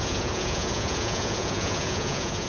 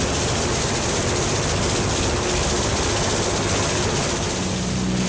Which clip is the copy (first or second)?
first